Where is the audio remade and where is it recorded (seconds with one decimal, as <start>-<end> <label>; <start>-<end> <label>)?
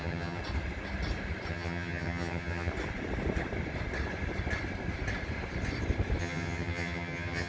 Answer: 0.0-0.4 remade; 0.4-1.5 recorded; 1.5-2.7 remade; 2.7-6.2 recorded; 6.2-7.5 remade